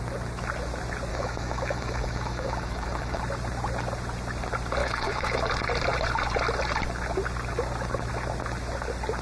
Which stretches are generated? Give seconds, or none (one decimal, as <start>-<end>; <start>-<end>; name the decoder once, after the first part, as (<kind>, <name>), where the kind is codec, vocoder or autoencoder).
1.1-3.2 (autoencoder, DAC-VAE); 4.8-5.4